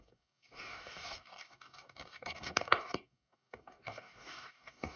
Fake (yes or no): yes